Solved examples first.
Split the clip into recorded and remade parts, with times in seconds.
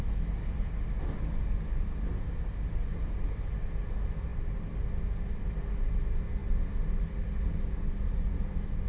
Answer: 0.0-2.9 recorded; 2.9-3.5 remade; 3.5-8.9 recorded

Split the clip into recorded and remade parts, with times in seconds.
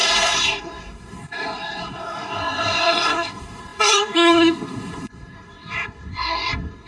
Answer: 0.0-6.9 remade